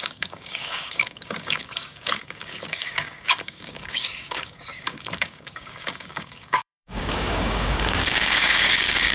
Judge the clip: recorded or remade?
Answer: remade